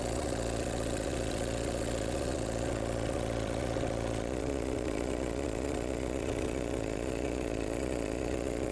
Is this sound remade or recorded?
remade